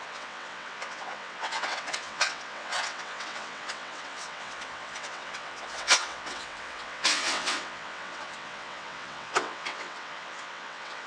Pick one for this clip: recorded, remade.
remade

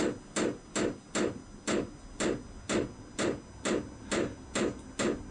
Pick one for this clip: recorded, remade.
recorded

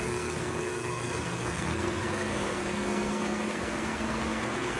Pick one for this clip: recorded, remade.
remade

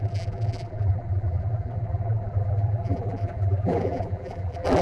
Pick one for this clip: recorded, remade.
remade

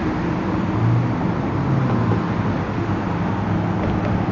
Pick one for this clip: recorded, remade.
recorded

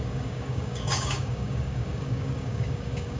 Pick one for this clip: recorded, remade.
remade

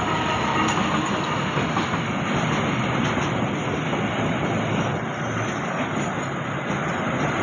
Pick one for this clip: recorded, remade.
recorded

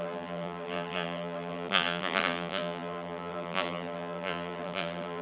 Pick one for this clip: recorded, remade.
remade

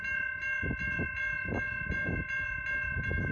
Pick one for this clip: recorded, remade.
recorded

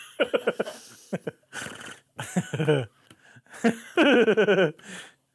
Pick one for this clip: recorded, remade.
recorded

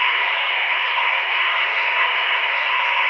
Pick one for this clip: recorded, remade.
remade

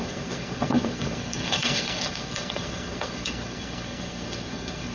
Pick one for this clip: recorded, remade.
remade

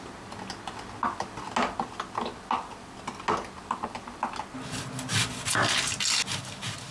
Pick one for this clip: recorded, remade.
recorded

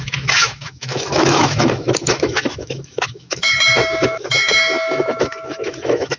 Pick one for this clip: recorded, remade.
remade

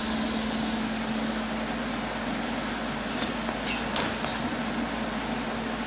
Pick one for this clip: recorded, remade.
recorded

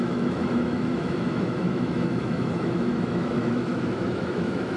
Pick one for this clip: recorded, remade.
remade